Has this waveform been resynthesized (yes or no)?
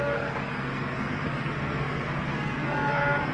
yes